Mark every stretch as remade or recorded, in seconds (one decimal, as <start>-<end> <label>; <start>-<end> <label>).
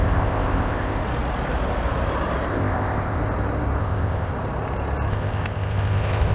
0.0-1.0 remade; 1.0-2.5 recorded; 2.5-3.2 remade; 3.2-3.8 recorded; 3.8-4.3 remade; 4.3-5.1 recorded; 5.1-6.3 remade